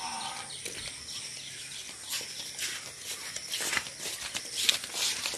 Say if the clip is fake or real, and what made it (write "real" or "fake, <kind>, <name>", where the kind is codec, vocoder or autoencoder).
real